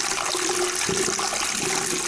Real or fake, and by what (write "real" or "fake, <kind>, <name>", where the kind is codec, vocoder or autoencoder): real